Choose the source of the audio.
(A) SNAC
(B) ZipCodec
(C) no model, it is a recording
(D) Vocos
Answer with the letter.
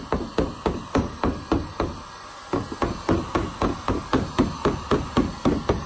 C